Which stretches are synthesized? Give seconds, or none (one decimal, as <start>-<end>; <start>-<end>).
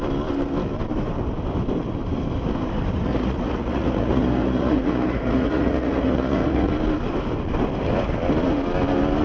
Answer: 3.1-6.7